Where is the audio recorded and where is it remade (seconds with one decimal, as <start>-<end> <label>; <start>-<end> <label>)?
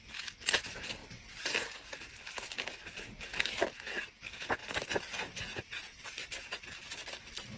0.0-7.6 recorded